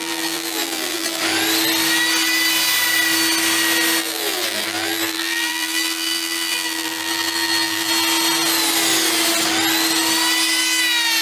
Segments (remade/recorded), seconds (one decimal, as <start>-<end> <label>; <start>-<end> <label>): 0.0-1.2 remade; 1.2-4.0 recorded; 4.0-7.9 remade; 7.9-11.2 recorded